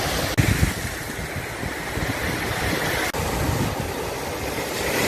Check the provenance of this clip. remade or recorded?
recorded